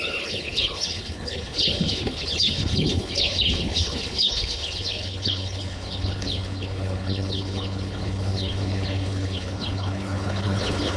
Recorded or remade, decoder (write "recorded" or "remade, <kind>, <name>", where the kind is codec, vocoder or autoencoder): remade, codec, HILCodec